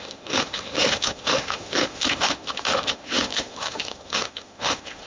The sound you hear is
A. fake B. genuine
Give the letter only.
A